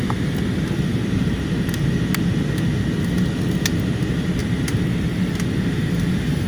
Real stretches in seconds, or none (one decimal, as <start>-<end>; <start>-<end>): 0.0-0.9; 1.9-4.4; 5.3-6.5